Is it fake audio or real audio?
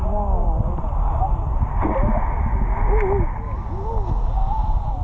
real